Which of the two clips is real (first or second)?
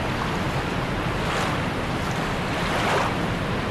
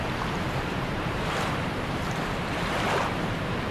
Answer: first